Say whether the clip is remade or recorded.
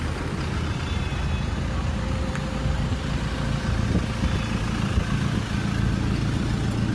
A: recorded